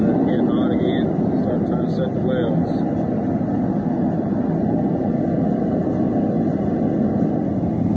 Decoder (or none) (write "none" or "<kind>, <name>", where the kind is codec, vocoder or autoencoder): none